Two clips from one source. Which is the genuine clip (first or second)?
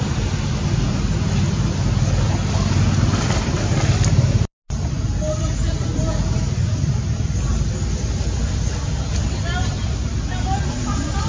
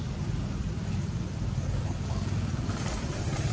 first